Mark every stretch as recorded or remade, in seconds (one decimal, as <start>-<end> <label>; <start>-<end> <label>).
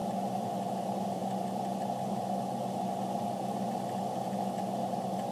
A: 0.0-5.3 recorded